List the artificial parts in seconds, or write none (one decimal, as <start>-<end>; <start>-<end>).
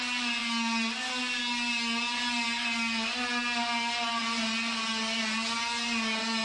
none